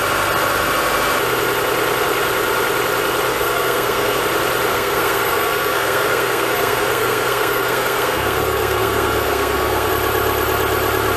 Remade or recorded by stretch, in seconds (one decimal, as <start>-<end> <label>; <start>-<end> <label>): 0.0-3.3 recorded; 3.3-4.2 remade; 4.2-4.7 recorded; 4.7-9.9 remade; 9.9-11.2 recorded